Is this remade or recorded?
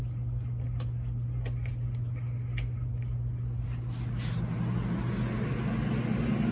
recorded